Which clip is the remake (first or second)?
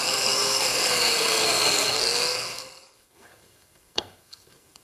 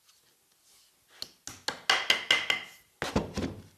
first